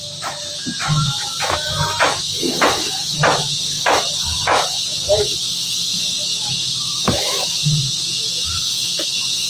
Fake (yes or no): yes